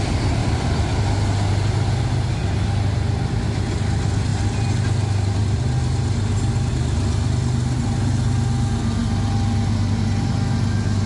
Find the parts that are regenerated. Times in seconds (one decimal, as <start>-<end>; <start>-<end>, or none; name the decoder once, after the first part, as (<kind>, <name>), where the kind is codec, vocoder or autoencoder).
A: 0.4-0.9 (vocoder, BigVGAN v2)